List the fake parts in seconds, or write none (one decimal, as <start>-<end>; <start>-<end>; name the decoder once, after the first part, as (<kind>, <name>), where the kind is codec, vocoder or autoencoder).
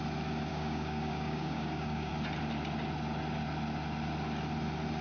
0.5-2.1 (codec, DAC)